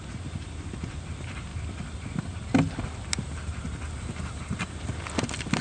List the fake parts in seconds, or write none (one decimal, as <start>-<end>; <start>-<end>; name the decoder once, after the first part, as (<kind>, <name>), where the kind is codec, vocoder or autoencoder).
none